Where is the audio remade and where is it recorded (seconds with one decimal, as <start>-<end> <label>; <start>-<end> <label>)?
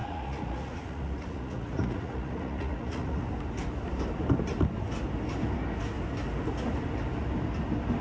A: 0.0-3.3 remade; 3.3-8.0 recorded